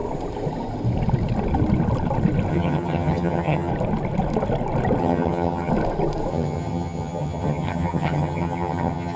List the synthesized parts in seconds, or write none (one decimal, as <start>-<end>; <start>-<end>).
2.5-3.7; 5.0-5.7; 6.3-9.2